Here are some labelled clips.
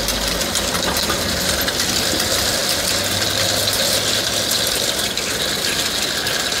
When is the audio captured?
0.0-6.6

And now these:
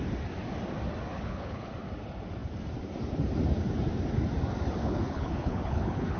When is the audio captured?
0.0-1.1; 1.7-4.8

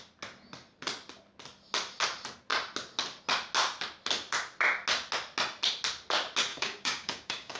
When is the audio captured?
0.0-6.5

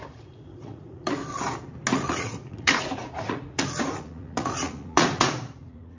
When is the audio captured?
1.2-1.9

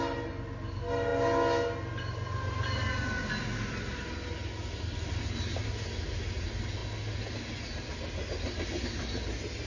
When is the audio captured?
0.0-9.7

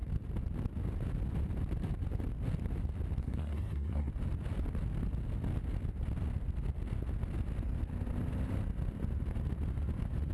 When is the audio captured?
0.0-3.2; 4.1-10.3

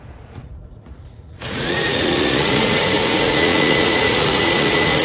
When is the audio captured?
none